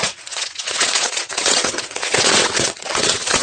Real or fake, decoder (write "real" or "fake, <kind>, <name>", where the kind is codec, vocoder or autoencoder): fake, vocoder, WaveNeXt